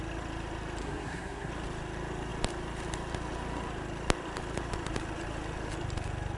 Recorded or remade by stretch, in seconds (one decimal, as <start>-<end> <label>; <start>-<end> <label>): 0.0-0.8 recorded; 0.8-1.5 remade; 1.5-6.4 recorded